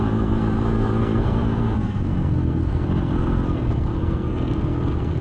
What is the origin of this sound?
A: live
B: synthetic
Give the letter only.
B